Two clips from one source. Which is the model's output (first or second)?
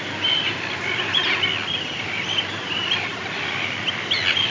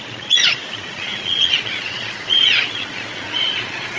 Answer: second